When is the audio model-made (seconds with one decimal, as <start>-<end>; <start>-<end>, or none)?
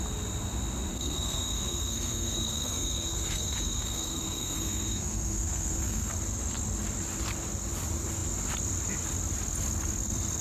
0.9-6.1